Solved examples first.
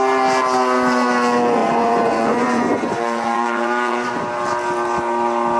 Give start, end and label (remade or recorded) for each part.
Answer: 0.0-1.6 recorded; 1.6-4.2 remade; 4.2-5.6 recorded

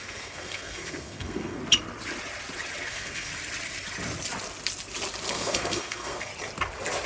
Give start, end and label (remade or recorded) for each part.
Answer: 0.0-1.6 remade; 1.6-2.9 recorded; 2.9-3.3 remade; 3.3-5.3 recorded; 5.3-6.3 remade; 6.3-7.1 recorded

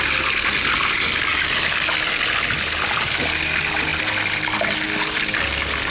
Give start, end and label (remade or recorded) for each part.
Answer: 0.0-5.9 recorded

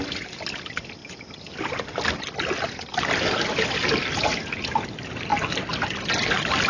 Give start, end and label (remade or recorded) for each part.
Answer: 0.0-6.7 recorded

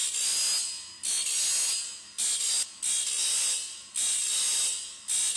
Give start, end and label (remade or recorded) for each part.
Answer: 0.0-5.4 recorded